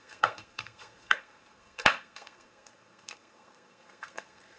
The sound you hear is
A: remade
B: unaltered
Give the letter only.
A